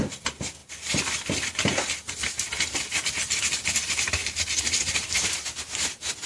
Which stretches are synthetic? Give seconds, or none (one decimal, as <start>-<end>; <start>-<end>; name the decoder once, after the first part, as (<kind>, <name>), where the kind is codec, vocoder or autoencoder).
0.6-2.5 (vocoder, BigVGAN v2)